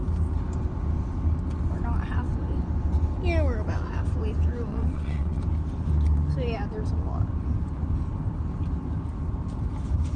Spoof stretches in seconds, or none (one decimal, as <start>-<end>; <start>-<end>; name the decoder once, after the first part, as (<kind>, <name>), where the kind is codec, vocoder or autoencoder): 4.7-5.4 (vocoder, WaveNeXt)